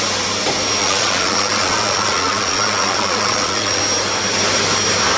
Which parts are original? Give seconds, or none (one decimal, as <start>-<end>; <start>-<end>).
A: 0.0-0.8; 3.8-5.2